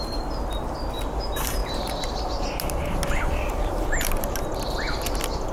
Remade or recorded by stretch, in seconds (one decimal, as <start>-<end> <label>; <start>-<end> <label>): 0.0-1.6 recorded; 1.6-4.4 remade; 4.4-5.5 recorded